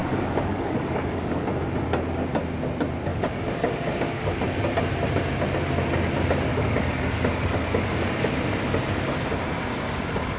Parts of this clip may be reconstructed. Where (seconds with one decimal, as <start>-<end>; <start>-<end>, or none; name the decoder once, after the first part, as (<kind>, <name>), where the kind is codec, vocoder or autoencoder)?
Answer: 0.0-1.5 (codec, DAC); 3.1-4.6; 6.5-8.3